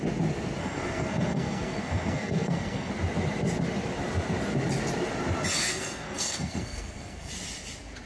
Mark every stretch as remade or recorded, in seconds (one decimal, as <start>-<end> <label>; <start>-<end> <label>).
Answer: 0.0-0.6 recorded; 0.6-2.9 remade; 2.9-5.6 recorded; 5.6-7.3 remade; 7.3-8.1 recorded